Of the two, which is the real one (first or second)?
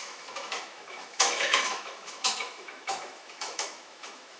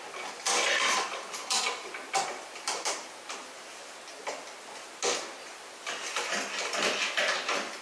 second